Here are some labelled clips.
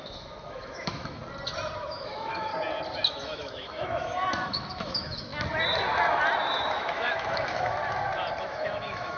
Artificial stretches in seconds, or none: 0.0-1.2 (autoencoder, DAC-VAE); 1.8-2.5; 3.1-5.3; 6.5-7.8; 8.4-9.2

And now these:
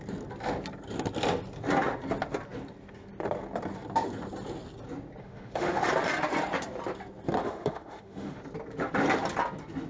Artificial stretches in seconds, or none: 5.2-5.9 (autoencoder, DAC-VAE); 7.4-8.4

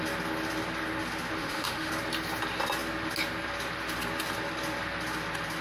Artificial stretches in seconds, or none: 1.4-1.9 (autoencoder, DAC-VAE)

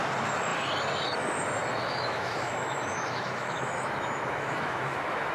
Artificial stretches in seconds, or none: 1.8-5.3 (autoencoder, DAC-VAE)

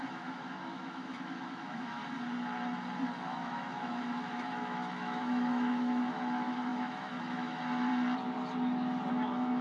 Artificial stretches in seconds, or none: 0.0-2.0 (autoencoder, DAC-VAE); 3.2-7.9; 9.1-9.6

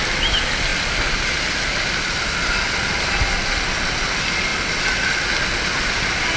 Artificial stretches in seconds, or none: none

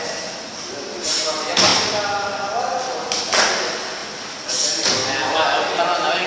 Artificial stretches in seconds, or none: none